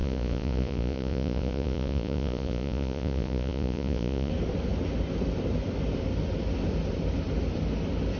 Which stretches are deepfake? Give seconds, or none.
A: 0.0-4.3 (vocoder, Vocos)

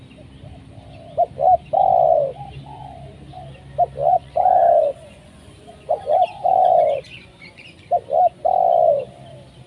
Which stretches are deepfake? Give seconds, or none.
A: 4.0-7.9 (vocoder, Vocos)

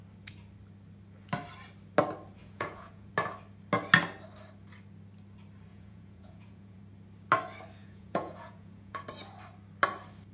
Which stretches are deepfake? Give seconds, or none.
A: 2.4-3.1 (vocoder, Vocos); 5.7-6.8; 7.8-9.0

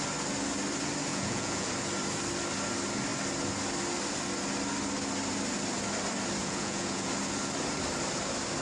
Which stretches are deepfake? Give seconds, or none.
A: 1.1-1.7 (vocoder, Vocos); 6.4-7.1

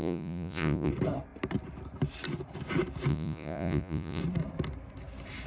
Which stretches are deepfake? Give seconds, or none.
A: 0.0-0.9 (vocoder, Vocos); 3.1-4.2

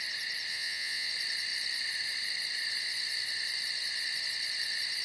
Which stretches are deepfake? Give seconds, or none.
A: 0.5-1.1 (vocoder, Vocos)

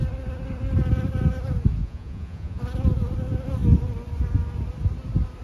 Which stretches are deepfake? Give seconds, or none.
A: 1.8-2.6 (vocoder, Vocos)

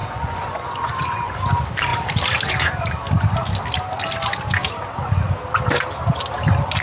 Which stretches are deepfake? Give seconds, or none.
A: 0.0-1.4 (vocoder, Vocos)